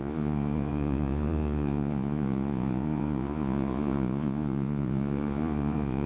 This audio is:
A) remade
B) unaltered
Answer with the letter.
A